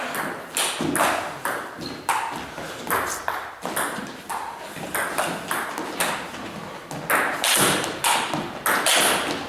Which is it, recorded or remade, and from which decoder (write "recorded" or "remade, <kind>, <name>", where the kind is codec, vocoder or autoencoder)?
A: recorded